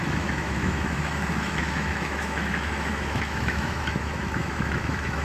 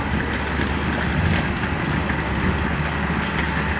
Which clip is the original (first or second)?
second